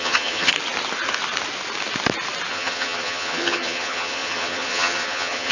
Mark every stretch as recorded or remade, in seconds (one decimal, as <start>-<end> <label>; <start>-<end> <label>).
0.0-0.5 remade; 0.5-2.5 recorded; 2.5-5.5 remade